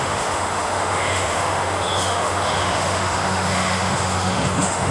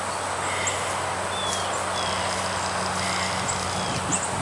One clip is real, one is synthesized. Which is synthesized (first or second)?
first